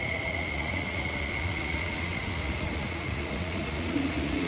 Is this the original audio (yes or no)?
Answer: no